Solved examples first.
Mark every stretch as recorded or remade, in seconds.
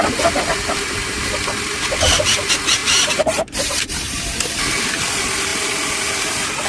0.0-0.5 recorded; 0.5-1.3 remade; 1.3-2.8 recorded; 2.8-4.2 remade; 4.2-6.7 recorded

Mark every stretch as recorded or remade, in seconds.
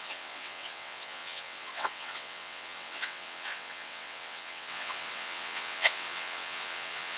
0.0-7.2 remade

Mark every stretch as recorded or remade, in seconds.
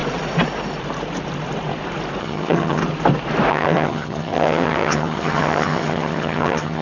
0.0-2.2 recorded; 2.2-2.8 remade; 2.8-3.5 recorded; 3.5-6.8 remade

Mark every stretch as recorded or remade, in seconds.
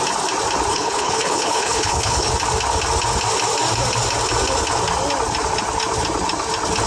0.0-0.7 recorded; 0.7-2.3 remade; 2.3-6.9 recorded